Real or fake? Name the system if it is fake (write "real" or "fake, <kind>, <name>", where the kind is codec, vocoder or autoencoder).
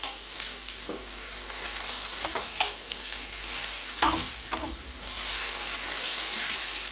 fake, codec, DAC